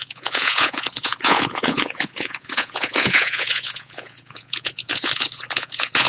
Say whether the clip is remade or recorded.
remade